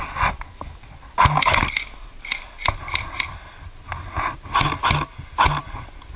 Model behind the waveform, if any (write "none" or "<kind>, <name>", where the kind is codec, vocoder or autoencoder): none